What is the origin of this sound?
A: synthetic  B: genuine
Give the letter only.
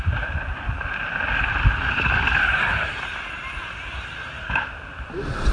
B